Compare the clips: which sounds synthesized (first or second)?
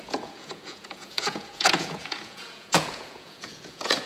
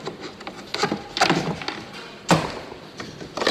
first